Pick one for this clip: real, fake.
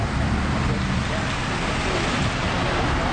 real